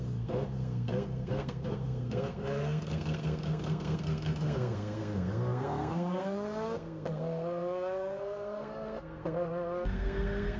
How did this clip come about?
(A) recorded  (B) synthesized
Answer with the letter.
B